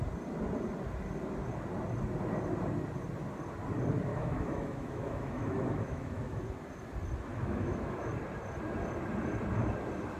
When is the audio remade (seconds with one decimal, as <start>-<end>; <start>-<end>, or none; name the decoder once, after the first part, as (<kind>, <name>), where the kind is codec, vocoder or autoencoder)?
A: 4.1-6.4 (autoencoder, DAC-VAE); 7.3-8.1